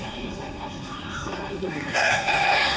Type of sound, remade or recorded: remade